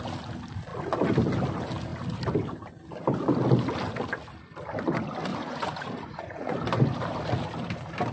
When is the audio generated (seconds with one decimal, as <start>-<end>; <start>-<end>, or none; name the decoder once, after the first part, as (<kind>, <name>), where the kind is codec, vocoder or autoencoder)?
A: 5.3-6.5 (vocoder, Vocos)